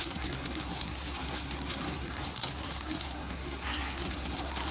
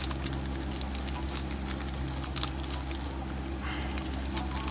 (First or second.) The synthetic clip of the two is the first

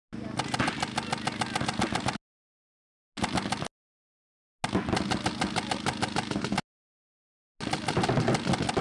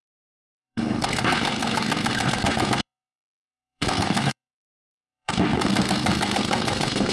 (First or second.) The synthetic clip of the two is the second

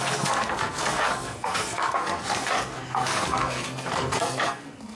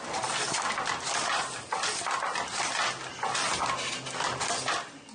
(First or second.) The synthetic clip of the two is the first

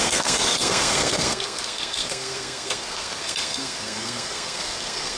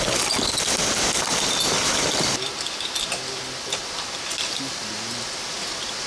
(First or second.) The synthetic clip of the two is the first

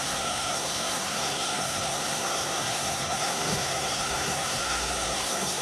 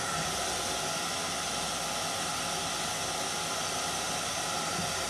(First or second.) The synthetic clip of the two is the first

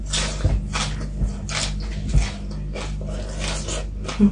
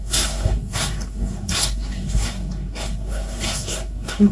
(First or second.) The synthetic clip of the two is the second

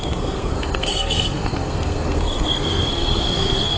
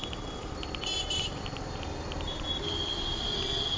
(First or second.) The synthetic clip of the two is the first